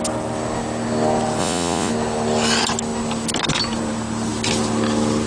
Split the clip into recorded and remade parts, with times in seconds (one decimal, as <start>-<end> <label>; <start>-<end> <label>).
0.0-1.4 recorded; 1.4-1.9 remade; 1.9-5.3 recorded